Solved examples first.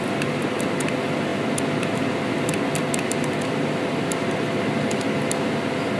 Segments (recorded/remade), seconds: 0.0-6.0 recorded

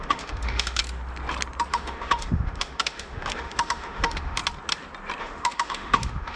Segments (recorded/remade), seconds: 0.0-0.8 remade; 0.8-1.7 recorded; 1.7-4.4 remade; 4.4-5.2 recorded; 5.2-6.4 remade